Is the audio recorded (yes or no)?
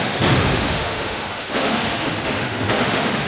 no